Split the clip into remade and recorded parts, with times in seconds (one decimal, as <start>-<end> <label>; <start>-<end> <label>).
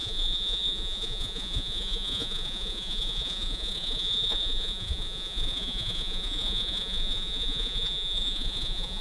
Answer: 0.0-9.0 remade